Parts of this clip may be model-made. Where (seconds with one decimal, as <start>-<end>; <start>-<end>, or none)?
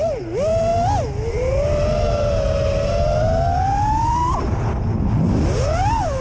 none